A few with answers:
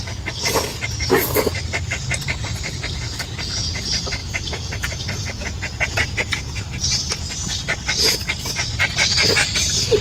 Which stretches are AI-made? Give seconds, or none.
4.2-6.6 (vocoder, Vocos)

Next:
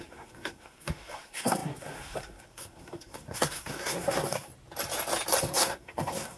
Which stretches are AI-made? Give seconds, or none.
0.0-4.5 (codec, SNAC); 5.4-6.4

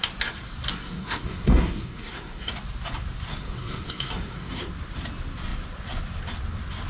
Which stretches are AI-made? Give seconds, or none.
0.7-2.5 (codec, SNAC); 3.3-4.7

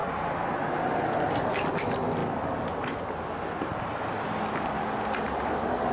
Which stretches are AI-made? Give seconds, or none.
none

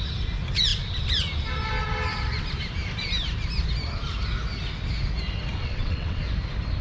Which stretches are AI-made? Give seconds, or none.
5.6-6.2 (vocoder, WaveNeXt)

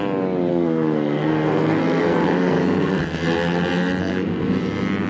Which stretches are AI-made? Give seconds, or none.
0.5-3.0 (codec, SNAC); 4.0-4.5